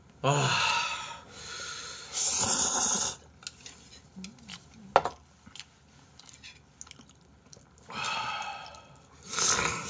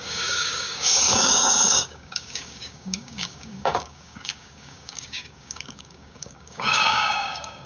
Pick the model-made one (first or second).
second